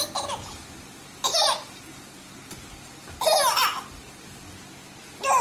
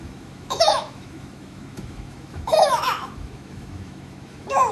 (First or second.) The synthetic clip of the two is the second